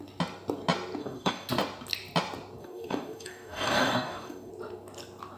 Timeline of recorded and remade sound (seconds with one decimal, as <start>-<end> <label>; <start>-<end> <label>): 0.0-1.0 recorded; 1.0-1.5 remade; 1.5-2.6 recorded; 2.6-4.5 remade; 4.5-5.4 recorded